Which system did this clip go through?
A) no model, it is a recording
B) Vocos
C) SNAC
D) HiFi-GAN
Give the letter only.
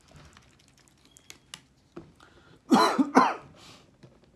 A